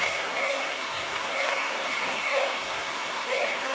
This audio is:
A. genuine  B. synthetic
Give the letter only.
B